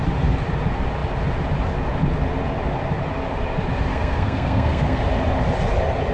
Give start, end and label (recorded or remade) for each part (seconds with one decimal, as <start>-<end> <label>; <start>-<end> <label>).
0.0-3.9 recorded; 3.9-5.0 remade; 5.0-6.1 recorded